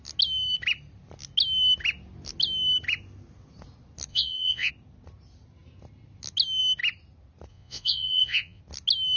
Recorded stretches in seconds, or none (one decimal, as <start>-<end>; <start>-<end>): 0.0-4.1; 4.7-7.5; 8.6-9.2